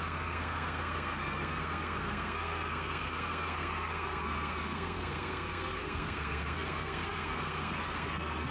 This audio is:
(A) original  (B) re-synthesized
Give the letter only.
B